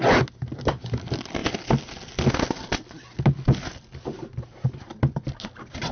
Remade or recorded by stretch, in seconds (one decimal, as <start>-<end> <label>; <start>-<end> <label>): 0.0-5.9 recorded